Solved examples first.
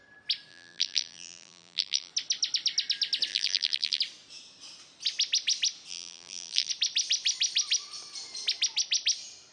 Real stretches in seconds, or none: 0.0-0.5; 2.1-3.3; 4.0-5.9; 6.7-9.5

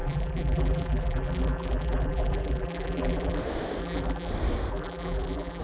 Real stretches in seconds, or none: 3.4-3.8; 4.3-4.7

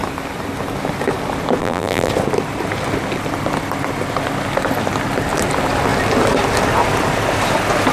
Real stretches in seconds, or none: 0.0-1.6; 2.1-7.9